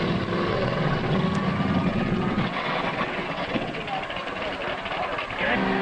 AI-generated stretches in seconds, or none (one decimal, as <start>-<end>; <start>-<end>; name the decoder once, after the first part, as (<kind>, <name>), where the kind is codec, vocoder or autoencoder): 0.5-1.2 (vocoder, WaveNeXt); 1.9-3.8